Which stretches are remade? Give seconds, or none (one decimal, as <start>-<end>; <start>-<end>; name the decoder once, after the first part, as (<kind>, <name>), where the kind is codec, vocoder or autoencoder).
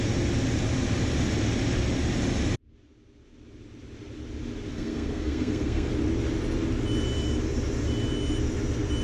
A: 4.7-5.9 (codec, SNAC)